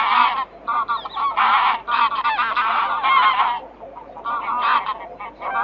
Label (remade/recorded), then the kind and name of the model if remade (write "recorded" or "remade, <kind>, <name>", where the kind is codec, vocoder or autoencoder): recorded